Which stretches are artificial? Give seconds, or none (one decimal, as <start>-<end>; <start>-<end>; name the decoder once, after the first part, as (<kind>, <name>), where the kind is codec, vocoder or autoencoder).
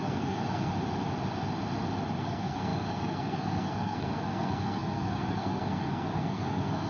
0.0-0.7 (codec, SNAC); 2.2-6.9